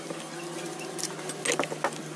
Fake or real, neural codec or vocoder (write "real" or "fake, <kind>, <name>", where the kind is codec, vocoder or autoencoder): real